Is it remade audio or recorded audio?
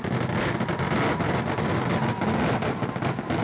recorded